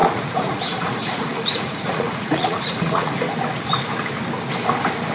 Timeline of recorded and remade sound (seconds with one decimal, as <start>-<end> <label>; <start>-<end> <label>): 0.0-3.1 remade; 3.1-5.1 recorded